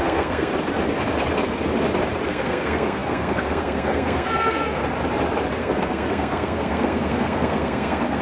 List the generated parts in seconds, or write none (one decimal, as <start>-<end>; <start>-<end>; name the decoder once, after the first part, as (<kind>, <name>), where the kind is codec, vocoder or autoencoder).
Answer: 0.0-0.5 (codec, SNAC); 2.3-4.8; 5.6-8.2